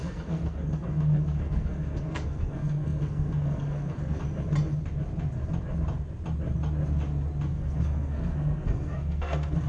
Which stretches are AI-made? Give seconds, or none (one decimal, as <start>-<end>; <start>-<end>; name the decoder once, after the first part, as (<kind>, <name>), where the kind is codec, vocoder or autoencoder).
0.0-4.2 (codec, SNAC); 7.5-9.7